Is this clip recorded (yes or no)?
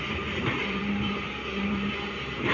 no